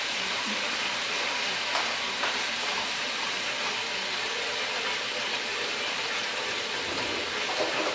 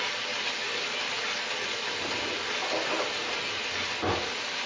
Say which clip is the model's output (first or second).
first